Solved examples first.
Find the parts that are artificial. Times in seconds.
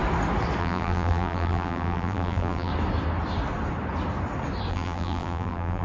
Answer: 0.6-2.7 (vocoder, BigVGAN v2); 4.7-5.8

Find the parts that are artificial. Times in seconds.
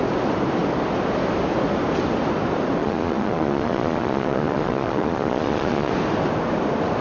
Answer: 2.8-5.9 (vocoder, Vocos)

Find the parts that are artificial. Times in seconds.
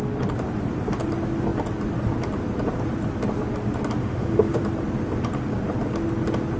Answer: 4.0-4.6 (autoencoder, DAC-VAE)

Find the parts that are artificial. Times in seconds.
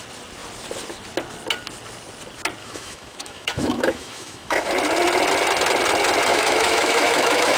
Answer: 2.6-4.7 (autoencoder, DAC-VAE); 6.3-7.6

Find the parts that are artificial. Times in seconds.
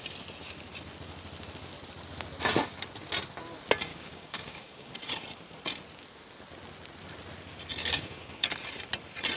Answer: 3.9-4.9 (codec, DAC); 7.8-8.5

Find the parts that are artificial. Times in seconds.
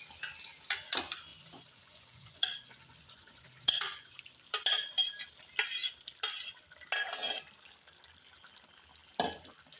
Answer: 1.3-4.2 (vocoder, Vocos)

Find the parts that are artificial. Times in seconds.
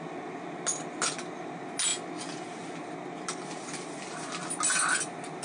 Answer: none